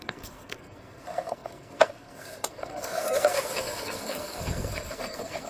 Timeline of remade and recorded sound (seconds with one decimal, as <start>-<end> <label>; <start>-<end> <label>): 0.0-5.5 remade